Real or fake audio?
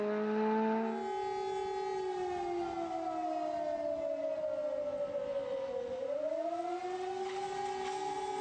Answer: real